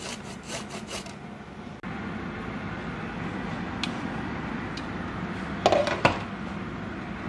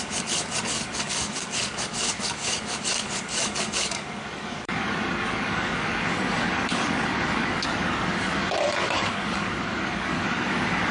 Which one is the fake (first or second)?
second